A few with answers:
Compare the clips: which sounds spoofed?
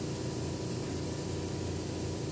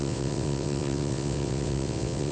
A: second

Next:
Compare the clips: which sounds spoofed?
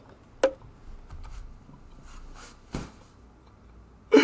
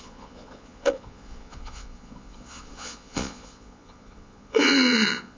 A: second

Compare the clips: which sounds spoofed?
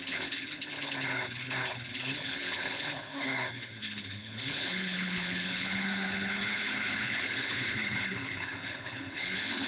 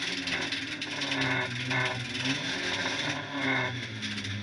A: first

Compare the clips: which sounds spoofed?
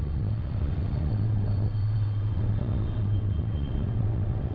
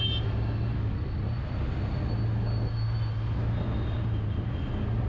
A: first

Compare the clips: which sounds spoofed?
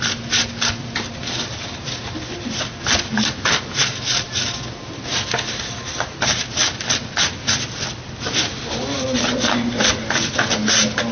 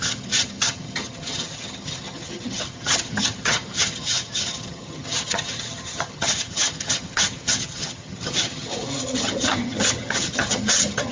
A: second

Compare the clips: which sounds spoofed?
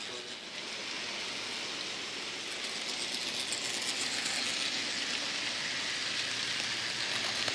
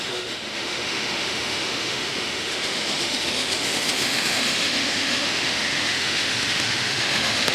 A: second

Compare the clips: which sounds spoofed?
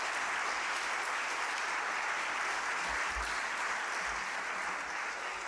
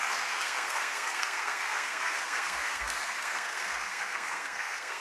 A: second